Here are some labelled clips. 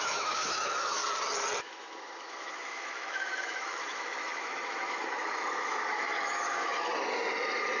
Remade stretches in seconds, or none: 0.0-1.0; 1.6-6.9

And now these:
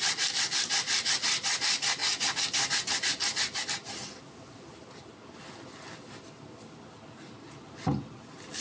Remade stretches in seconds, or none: none

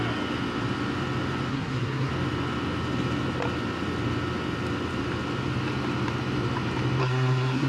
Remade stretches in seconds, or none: 1.5-2.1; 7.0-7.7

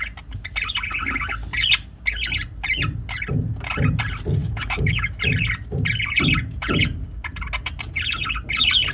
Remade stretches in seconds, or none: 4.4-5.2

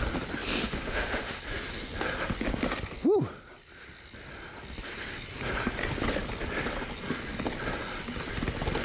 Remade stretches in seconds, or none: 0.6-1.4